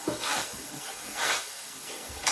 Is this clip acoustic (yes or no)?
no